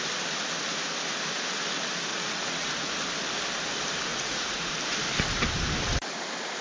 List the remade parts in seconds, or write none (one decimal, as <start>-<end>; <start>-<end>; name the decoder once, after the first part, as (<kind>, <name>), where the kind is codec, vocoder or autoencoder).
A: 2.1-2.9 (vocoder, Vocos); 4.1-4.7